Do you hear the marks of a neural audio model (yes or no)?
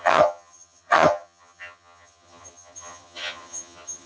yes